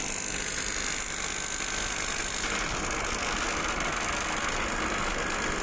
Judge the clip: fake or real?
real